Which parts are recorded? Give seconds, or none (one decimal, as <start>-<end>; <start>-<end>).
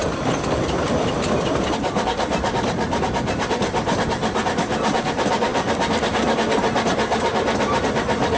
0.0-8.4